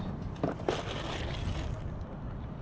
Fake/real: real